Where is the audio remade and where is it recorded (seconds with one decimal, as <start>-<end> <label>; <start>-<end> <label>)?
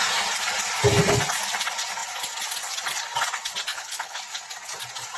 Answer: 0.0-3.7 recorded; 3.7-4.2 remade; 4.2-5.2 recorded